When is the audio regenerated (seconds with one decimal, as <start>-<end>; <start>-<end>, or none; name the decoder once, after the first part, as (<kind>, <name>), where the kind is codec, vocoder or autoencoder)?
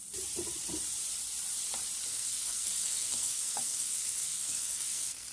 2.1-5.3 (codec, SNAC)